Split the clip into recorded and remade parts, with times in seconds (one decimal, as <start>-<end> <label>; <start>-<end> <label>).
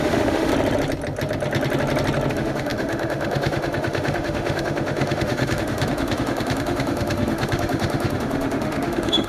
0.0-0.5 remade; 0.5-2.3 recorded; 2.3-9.3 remade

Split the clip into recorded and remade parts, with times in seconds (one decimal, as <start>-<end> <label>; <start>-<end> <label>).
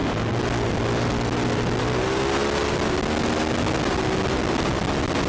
0.0-5.3 recorded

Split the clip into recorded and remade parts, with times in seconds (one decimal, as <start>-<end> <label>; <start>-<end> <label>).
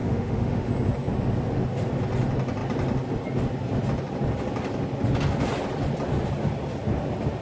0.0-0.7 remade; 0.7-7.4 recorded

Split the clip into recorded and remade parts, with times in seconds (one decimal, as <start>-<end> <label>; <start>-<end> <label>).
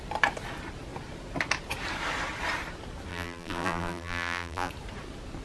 0.0-3.1 recorded; 3.1-4.7 remade; 4.7-5.4 recorded